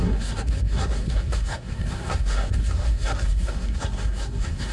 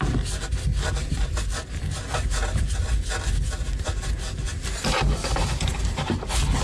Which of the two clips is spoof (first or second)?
first